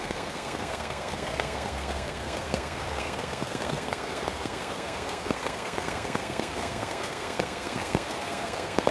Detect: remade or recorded remade